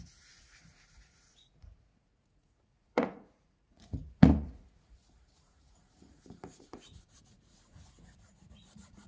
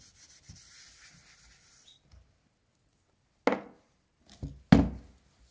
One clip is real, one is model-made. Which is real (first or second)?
second